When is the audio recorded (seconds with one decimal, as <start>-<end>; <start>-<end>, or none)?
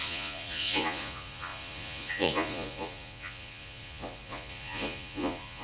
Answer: none